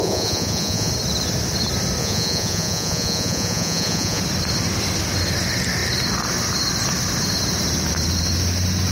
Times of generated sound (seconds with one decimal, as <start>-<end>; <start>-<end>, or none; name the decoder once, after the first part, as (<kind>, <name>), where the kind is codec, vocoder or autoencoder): 0.0-0.9 (vocoder, Vocos); 2.0-4.2